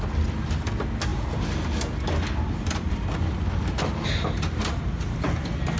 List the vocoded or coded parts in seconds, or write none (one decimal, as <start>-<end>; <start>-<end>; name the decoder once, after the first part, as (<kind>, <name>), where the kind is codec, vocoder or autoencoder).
none